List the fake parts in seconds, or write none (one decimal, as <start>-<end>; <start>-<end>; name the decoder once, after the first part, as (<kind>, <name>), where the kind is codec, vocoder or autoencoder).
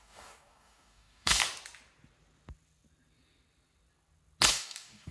0.0-1.4 (codec, DAC); 4.5-5.1